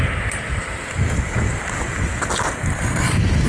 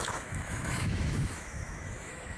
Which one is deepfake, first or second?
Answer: second